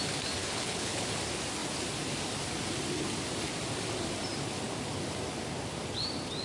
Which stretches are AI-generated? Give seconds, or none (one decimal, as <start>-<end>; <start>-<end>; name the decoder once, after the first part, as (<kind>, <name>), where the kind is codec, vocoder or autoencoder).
0.4-1.2 (codec, HILCodec)